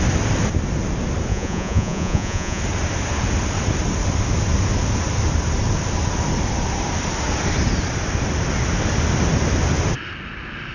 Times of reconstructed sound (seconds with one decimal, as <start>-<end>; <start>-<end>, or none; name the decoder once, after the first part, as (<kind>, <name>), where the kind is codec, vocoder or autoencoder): 1.3-2.6 (vocoder, Vocos)